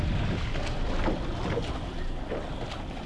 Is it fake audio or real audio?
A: real